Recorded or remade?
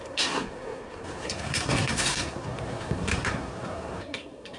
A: remade